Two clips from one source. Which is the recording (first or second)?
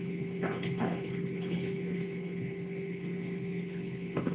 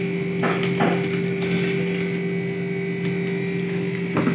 second